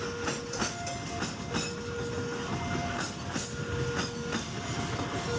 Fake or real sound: real